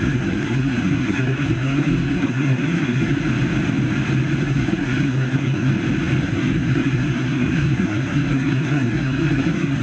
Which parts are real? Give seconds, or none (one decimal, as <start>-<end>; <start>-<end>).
3.2-4.4; 5.7-6.2